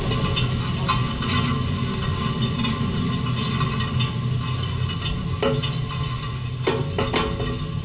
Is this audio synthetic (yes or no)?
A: no